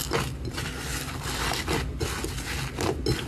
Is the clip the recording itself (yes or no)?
yes